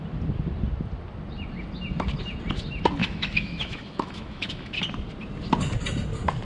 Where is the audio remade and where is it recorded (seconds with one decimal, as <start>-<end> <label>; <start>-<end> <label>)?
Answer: 0.0-3.0 recorded; 3.0-4.7 remade; 4.7-6.4 recorded